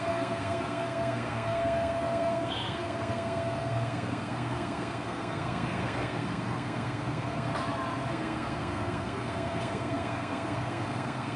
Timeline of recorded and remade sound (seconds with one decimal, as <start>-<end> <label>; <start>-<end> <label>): 0.0-7.5 remade; 7.5-8.1 recorded; 8.1-11.4 remade